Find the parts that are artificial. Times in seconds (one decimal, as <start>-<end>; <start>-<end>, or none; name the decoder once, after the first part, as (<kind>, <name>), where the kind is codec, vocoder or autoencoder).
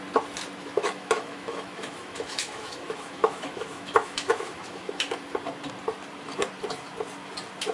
0.6-5.2 (autoencoder, DAC-VAE)